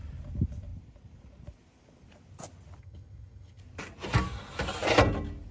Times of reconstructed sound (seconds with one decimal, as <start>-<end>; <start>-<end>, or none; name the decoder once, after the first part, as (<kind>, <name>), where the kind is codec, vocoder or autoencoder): 2.8-3.6 (vocoder, HiFi-GAN)